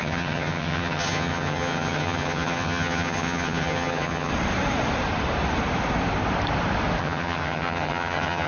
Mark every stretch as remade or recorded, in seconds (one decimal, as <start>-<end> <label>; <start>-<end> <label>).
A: 0.0-4.3 remade; 4.3-7.0 recorded; 7.0-8.5 remade